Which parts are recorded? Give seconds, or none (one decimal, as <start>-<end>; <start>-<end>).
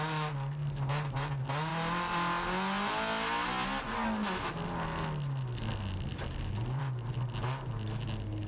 0.0-8.5